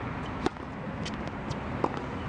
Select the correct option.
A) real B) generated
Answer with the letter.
A